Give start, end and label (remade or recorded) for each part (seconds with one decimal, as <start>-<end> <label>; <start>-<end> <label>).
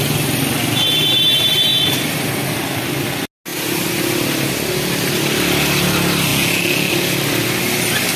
0.0-6.3 recorded; 6.3-6.9 remade; 6.9-8.2 recorded